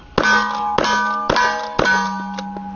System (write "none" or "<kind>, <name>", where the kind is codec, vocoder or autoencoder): none